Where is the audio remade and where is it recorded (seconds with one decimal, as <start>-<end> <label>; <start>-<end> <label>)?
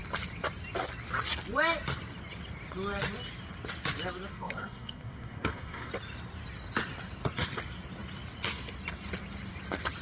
0.0-4.3 recorded; 4.3-5.9 remade; 5.9-10.0 recorded